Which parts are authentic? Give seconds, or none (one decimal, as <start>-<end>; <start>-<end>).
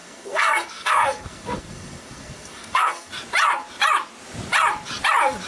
3.1-5.5